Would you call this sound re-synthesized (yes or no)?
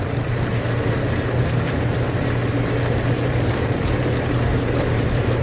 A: yes